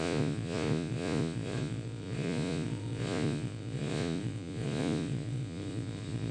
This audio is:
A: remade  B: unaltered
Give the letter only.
A